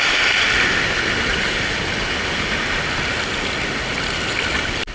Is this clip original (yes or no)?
yes